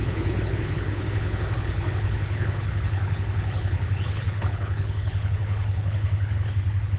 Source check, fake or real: fake